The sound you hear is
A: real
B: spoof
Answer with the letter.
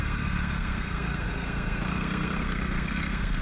B